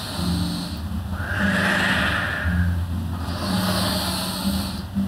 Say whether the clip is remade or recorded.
recorded